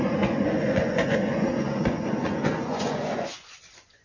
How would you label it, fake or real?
fake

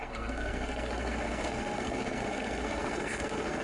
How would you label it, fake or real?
fake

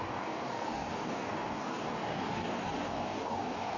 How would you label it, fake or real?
fake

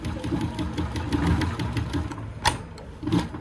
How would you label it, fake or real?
real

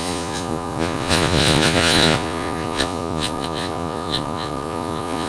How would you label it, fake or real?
fake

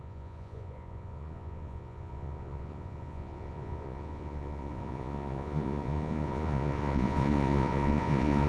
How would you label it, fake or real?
fake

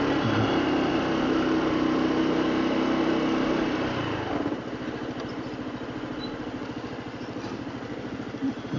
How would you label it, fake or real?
real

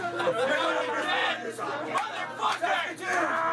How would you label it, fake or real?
real